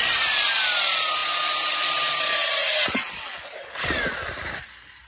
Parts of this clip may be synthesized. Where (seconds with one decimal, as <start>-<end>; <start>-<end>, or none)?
none